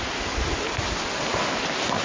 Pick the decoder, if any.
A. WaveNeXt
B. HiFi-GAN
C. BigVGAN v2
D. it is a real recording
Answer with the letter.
D